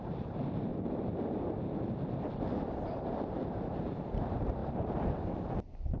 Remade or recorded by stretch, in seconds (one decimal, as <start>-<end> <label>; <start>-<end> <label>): 0.0-0.7 remade; 0.7-2.7 recorded; 2.7-4.6 remade; 4.6-5.2 recorded; 5.2-6.0 remade